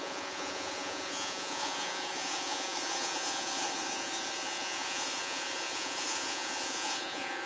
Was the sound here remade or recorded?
remade